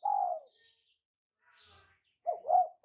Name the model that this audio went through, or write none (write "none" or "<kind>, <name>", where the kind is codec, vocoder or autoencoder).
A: none